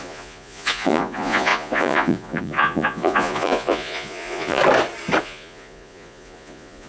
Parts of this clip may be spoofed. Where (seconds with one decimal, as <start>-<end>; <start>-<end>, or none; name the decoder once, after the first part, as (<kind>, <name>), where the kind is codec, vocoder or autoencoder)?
0.0-4.6 (vocoder, Vocos); 5.2-6.9